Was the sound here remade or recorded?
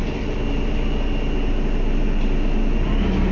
recorded